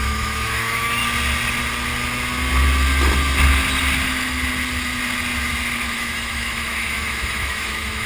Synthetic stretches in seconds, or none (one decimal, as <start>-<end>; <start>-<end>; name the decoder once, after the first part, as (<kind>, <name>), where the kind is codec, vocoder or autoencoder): 0.0-1.0 (autoencoder, DAC-VAE); 5.9-8.1